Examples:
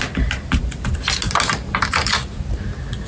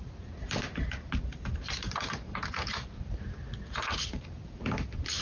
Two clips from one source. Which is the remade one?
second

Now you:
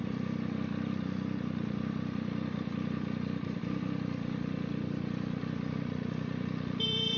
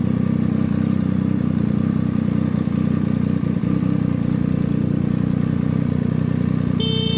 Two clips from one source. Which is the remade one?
first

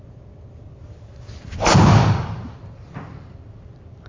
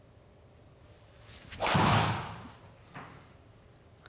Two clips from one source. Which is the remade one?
first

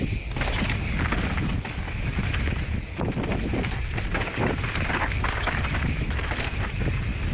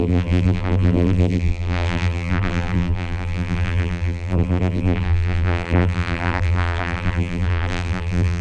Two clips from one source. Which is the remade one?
second